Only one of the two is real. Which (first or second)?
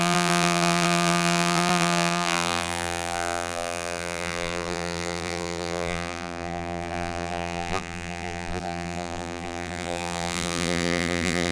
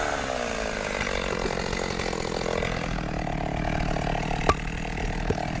second